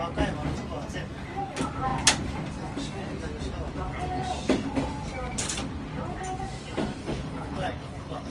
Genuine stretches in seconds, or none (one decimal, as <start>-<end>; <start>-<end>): 0.0-7.0